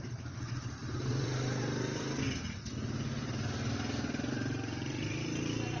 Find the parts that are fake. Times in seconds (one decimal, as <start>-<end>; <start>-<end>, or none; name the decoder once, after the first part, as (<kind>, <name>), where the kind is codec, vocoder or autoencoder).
none